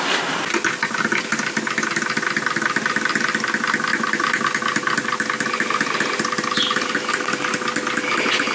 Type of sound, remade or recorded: recorded